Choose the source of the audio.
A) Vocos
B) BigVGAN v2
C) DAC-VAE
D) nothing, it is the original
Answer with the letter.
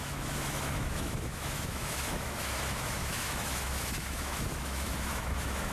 C